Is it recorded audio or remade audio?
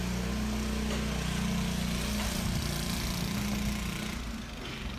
recorded